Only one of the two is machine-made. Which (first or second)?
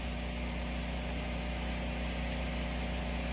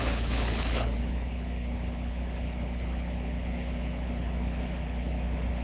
second